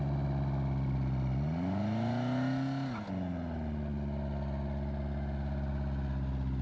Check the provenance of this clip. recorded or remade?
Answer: recorded